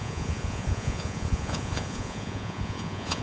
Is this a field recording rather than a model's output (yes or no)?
no